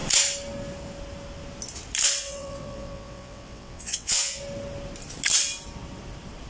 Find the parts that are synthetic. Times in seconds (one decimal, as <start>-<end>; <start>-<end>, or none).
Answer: 2.2-4.4